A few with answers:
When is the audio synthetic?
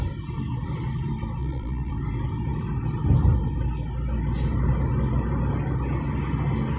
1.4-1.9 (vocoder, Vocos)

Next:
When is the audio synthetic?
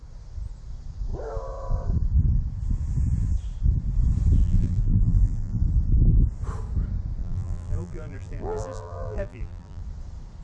4.4-5.6 (vocoder, BigVGAN v2); 7.2-9.8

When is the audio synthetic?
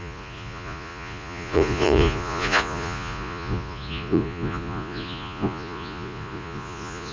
0.0-7.1 (vocoder, Vocos)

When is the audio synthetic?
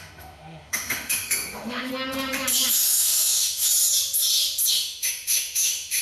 0.0-1.9 (autoencoder, DAC-VAE); 2.7-3.7; 4.7-6.0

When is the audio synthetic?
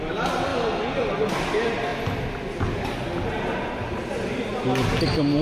none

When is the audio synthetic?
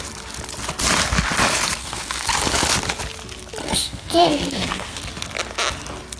1.8-2.3 (codec, SNAC); 3.6-5.0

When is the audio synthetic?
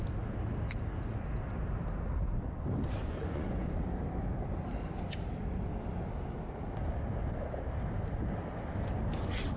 3.0-3.8 (vocoder, Vocos)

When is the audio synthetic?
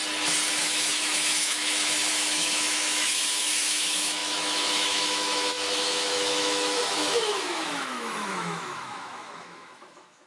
0.5-10.3 (autoencoder, DAC-VAE)